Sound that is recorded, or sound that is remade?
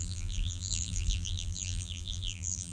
remade